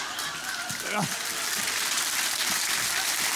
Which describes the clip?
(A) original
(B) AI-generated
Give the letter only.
B